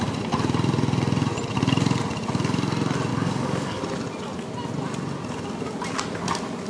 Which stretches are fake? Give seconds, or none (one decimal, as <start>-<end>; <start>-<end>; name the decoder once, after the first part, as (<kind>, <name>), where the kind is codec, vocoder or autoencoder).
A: 3.1-3.8 (codec, DAC)